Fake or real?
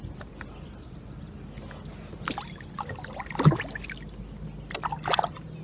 real